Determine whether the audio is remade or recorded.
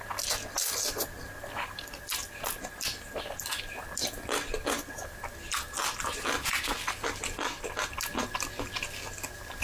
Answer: recorded